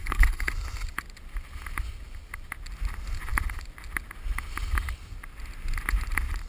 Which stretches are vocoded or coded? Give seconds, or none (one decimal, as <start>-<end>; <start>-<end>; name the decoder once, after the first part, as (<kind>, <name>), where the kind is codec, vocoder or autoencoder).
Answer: 0.0-0.5 (codec, SNAC)